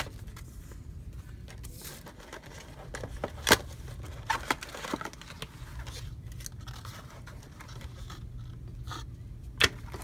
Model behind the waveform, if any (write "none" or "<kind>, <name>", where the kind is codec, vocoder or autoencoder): none